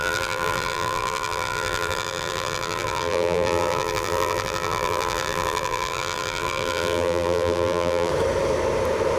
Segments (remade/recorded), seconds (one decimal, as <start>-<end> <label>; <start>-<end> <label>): 0.0-8.1 remade; 8.1-9.2 recorded